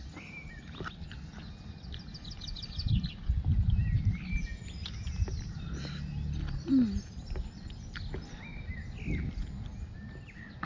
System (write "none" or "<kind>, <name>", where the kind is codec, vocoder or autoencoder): none